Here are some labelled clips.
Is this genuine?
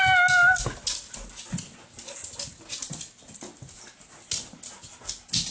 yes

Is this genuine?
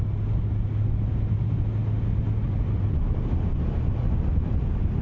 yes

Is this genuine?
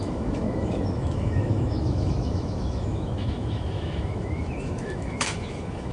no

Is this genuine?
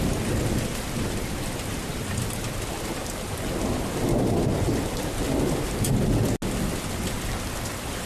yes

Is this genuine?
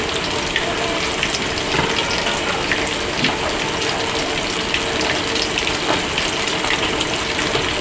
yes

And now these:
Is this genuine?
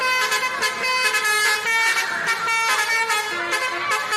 yes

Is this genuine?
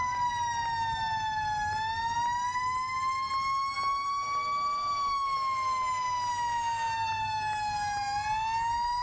yes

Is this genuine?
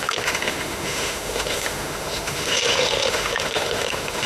no